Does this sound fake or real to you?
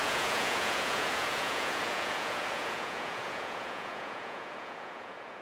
fake